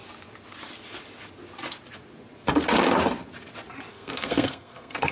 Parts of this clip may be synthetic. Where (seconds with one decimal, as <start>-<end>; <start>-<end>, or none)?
3.9-5.1